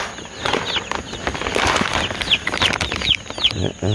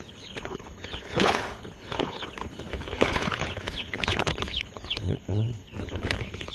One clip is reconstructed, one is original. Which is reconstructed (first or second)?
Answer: second